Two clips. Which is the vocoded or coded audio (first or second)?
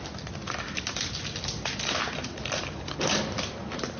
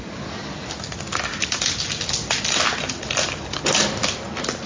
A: first